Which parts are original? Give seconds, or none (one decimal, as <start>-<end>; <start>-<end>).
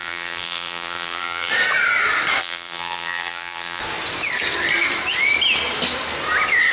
1.5-2.4; 3.8-6.7